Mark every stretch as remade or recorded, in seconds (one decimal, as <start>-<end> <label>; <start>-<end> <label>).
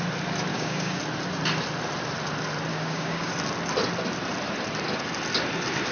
0.0-0.5 recorded; 0.5-1.0 remade; 1.0-2.7 recorded; 2.7-3.3 remade; 3.3-5.9 recorded